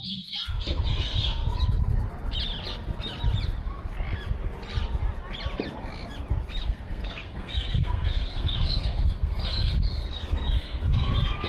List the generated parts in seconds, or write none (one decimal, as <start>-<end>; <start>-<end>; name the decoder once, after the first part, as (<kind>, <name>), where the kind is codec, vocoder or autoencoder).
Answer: 0.0-1.4 (codec, SNAC); 6.6-11.5